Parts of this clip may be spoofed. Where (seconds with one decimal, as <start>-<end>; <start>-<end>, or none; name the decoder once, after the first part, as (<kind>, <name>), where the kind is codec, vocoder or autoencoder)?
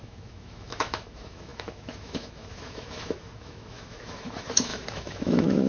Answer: 0.0-5.7 (autoencoder, DAC-VAE)